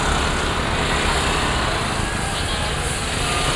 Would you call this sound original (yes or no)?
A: yes